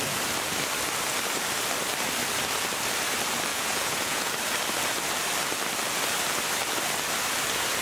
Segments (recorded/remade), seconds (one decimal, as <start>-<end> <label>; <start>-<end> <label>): 0.0-3.5 recorded; 3.5-4.3 remade; 4.3-7.8 recorded

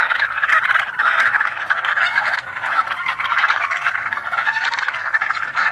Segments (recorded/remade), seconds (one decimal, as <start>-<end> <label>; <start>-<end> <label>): 0.0-0.5 remade; 0.5-1.0 recorded; 1.0-5.7 remade

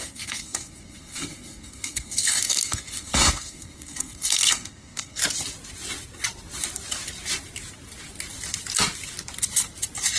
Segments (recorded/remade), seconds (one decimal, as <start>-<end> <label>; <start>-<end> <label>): 0.0-5.2 remade; 5.2-10.2 recorded

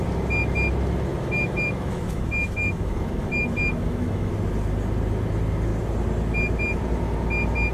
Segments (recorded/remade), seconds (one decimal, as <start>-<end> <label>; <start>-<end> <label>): 0.0-1.1 recorded; 1.1-4.3 remade; 4.3-7.7 recorded

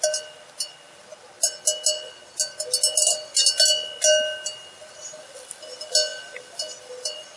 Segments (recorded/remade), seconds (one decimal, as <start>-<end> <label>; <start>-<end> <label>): 0.0-7.4 recorded

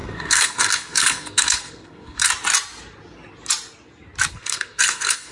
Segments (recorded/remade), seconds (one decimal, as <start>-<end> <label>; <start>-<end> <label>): 0.0-2.3 remade; 2.3-4.3 recorded; 4.3-5.3 remade

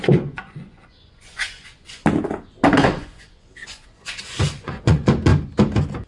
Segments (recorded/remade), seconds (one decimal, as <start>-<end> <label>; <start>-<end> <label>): 0.0-2.0 remade; 2.0-2.7 recorded; 2.7-5.3 remade; 5.3-6.1 recorded

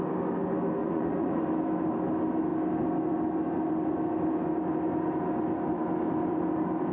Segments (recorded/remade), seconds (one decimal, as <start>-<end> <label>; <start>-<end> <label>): 0.0-0.8 recorded; 0.8-1.4 remade; 1.4-6.9 recorded